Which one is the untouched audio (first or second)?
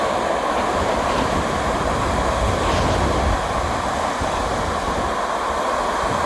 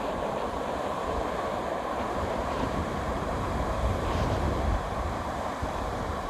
first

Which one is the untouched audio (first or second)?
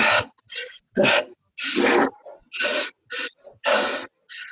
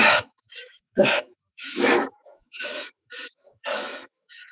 first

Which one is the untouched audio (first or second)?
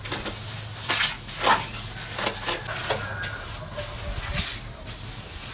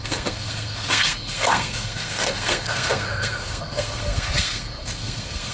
first